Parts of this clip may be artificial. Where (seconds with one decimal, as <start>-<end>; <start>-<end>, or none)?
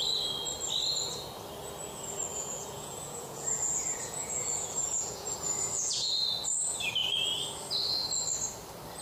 2.3-6.1